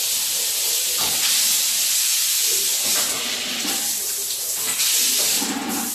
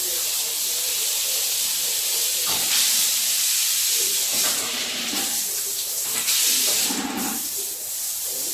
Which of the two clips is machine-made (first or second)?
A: second